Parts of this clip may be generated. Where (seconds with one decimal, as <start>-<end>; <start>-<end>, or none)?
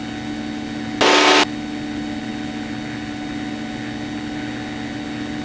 none